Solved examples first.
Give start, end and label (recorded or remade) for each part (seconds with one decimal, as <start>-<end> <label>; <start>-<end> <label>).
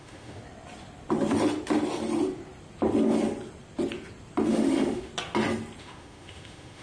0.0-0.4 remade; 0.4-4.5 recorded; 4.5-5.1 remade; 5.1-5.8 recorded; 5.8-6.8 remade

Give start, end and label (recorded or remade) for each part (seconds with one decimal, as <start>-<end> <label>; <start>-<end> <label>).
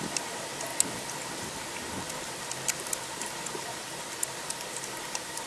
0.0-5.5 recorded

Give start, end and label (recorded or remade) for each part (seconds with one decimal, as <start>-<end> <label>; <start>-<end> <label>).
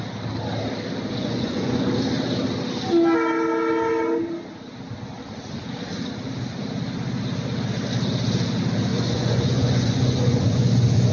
0.0-1.1 recorded; 1.1-1.9 remade; 1.9-8.9 recorded; 8.9-11.1 remade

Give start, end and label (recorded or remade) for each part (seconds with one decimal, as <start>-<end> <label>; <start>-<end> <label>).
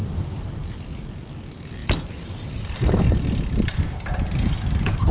0.0-1.8 recorded; 1.8-5.1 remade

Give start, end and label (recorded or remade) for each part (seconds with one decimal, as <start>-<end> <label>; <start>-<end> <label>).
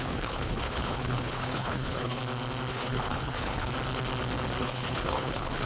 0.0-2.2 remade; 2.2-2.7 recorded; 2.7-3.7 remade; 3.7-4.6 recorded; 4.6-5.7 remade